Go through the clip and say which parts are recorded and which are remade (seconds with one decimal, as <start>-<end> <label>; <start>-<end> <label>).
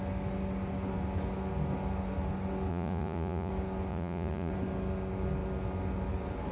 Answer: 0.0-2.7 recorded; 2.7-3.5 remade; 3.5-3.9 recorded; 3.9-4.5 remade; 4.5-6.5 recorded